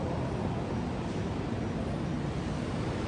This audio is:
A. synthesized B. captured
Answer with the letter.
B